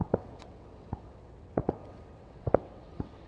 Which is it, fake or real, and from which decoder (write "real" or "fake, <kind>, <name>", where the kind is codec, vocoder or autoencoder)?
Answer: fake, vocoder, WaveNeXt